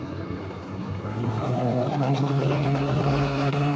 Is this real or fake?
fake